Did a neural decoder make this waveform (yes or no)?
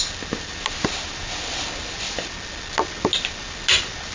no